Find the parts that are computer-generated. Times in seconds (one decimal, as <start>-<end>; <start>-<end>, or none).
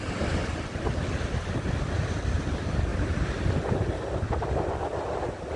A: none